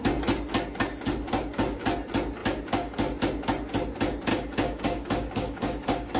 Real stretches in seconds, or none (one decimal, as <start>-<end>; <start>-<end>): 0.0-4.3